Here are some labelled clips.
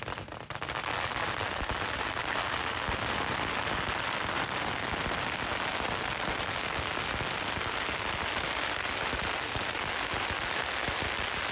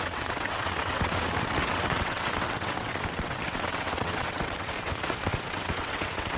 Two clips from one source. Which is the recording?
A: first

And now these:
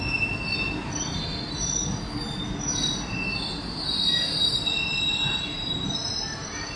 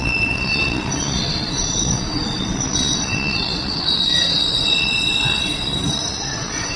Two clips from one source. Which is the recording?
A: first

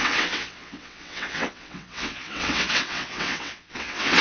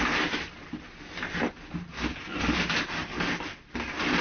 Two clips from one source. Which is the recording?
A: second